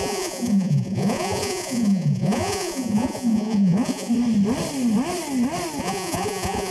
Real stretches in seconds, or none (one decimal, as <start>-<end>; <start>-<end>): 4.1-5.8